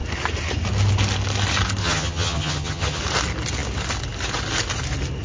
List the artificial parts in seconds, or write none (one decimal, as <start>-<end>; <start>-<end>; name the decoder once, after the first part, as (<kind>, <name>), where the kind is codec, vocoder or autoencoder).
1.8-3.0 (vocoder, HiFi-GAN)